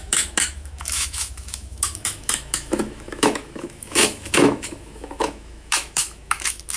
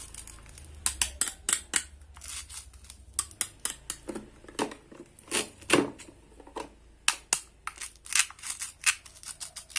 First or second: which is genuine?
second